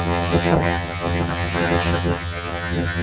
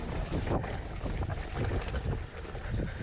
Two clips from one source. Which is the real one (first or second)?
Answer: second